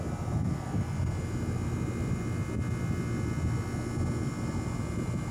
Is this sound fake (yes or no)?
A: no